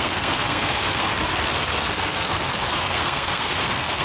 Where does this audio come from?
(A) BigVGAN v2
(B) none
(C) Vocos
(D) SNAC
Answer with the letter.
D